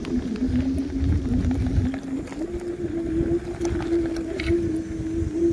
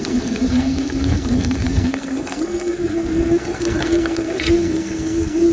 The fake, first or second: second